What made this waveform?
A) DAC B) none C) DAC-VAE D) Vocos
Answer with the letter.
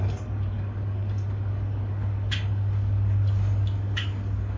A